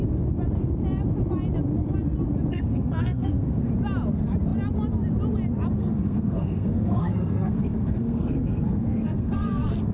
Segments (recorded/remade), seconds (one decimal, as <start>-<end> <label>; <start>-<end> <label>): 0.0-2.5 recorded; 2.5-3.7 remade; 3.7-5.8 recorded; 5.8-9.9 remade